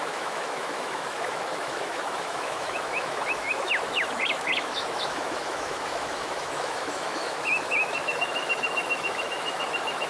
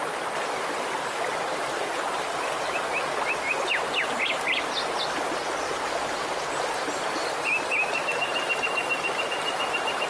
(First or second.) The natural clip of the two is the second